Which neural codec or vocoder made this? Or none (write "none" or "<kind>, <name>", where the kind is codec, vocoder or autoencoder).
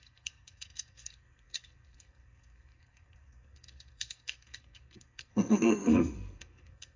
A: codec, SNAC